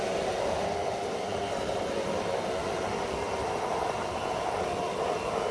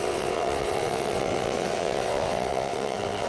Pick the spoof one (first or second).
second